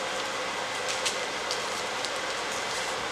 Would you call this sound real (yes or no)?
yes